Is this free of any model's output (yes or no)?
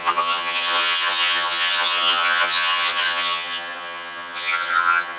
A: no